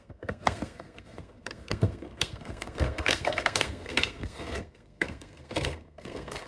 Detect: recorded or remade remade